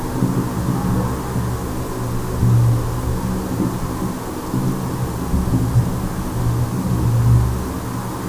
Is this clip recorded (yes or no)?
yes